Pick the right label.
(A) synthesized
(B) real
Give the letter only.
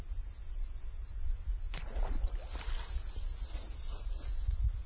B